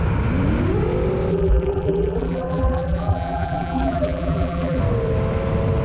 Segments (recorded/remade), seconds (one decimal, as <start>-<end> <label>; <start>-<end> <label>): 0.0-1.3 recorded; 1.3-4.8 remade; 4.8-5.8 recorded